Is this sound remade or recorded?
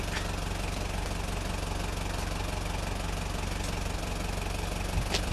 recorded